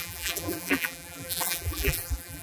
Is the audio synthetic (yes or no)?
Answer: yes